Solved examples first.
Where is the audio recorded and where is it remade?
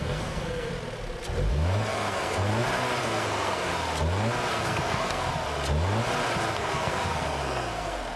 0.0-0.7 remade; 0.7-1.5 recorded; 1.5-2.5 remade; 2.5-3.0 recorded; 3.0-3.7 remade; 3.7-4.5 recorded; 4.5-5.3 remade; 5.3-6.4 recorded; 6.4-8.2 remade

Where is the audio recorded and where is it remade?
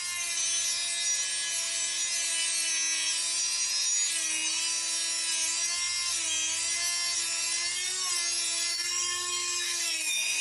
0.0-8.7 recorded; 8.7-10.4 remade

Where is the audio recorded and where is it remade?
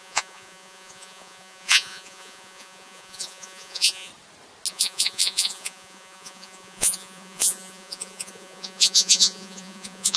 0.0-4.1 remade; 4.1-4.7 recorded; 4.7-10.2 remade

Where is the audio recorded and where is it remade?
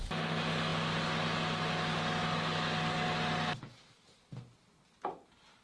0.0-5.6 recorded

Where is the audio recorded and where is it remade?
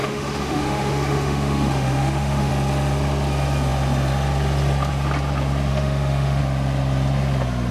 0.0-2.5 remade; 2.5-5.7 recorded; 5.7-6.4 remade; 6.4-7.7 recorded